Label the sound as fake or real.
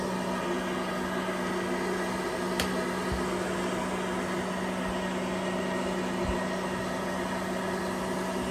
real